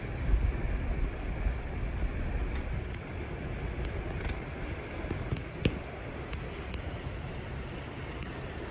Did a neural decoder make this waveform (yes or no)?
no